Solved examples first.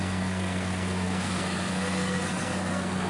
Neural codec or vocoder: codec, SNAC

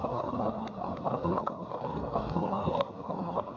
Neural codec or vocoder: codec, SNAC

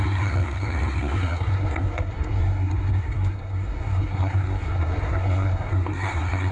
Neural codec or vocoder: codec, SNAC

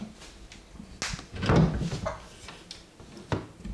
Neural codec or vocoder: none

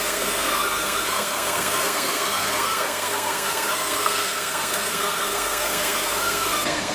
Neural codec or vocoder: codec, SNAC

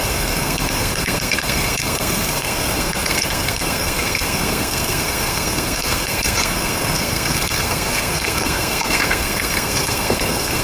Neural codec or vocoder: codec, SNAC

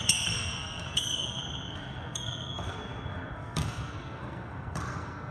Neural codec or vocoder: codec, SNAC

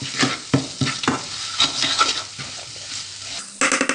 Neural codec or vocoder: none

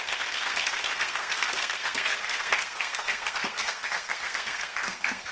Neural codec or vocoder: codec, SNAC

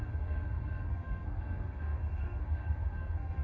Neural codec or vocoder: codec, SNAC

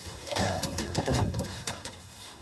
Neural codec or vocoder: codec, SNAC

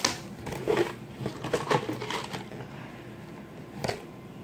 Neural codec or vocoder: none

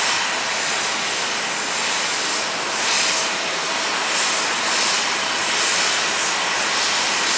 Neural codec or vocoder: none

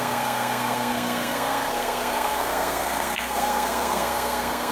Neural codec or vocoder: codec, SNAC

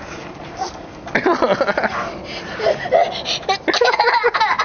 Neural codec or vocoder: none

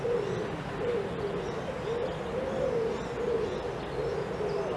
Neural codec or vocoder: none